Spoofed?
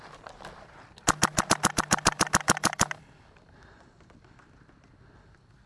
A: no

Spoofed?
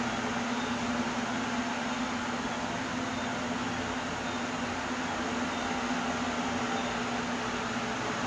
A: no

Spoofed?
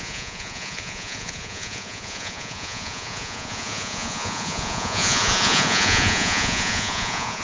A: yes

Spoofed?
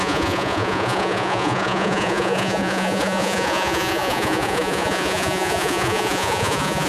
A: yes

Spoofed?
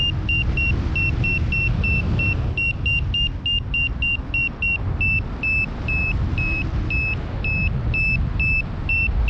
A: no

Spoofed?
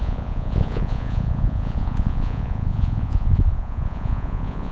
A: yes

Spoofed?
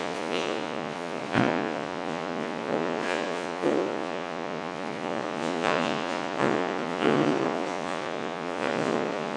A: yes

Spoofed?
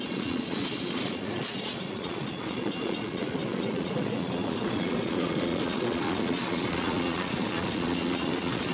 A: yes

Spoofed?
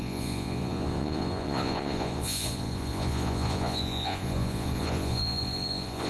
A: yes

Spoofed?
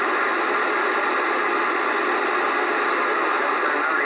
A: no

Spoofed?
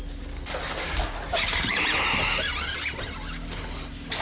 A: no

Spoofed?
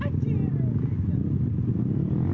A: no